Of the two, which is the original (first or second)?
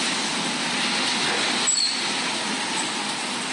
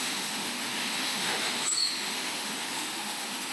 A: first